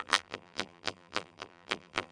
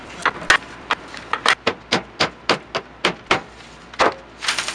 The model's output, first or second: first